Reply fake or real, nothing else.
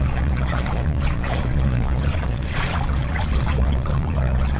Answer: fake